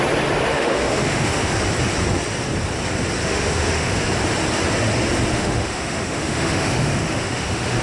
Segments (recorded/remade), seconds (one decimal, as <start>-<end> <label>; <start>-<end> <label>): 0.0-0.5 recorded; 0.5-1.5 remade; 1.5-3.2 recorded; 3.2-4.0 remade; 4.0-5.3 recorded; 5.3-7.8 remade